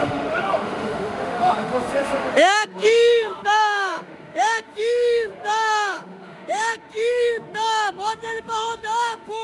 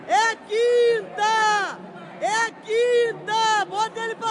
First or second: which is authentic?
second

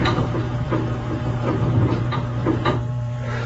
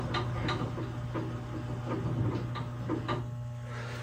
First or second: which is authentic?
second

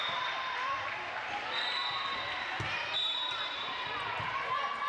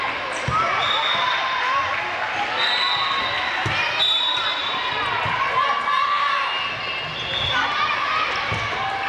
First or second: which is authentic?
second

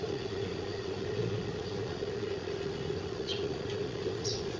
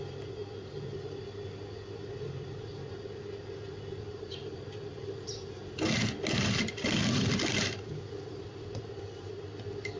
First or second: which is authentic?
second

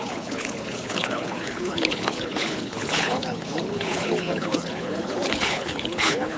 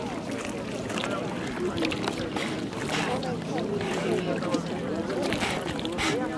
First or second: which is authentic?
second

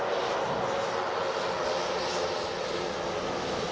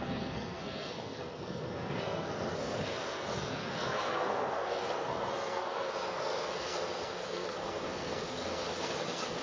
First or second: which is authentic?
first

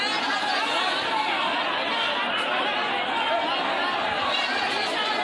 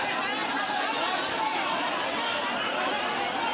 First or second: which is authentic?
first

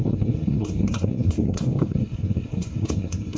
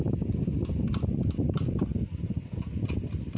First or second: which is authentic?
second